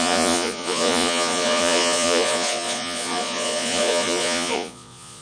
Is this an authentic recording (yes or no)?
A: no